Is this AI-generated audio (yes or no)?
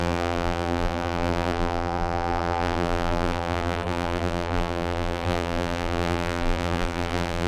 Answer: yes